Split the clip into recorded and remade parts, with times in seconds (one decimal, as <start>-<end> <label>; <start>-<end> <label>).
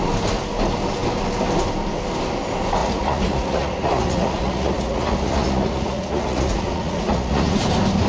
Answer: 0.0-2.8 recorded; 2.8-7.6 remade; 7.6-8.1 recorded